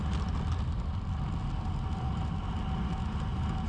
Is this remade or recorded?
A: recorded